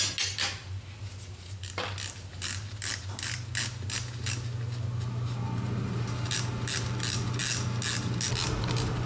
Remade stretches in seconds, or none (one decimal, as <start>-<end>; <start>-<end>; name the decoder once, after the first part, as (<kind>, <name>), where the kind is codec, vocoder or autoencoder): none